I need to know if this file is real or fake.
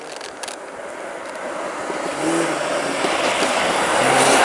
real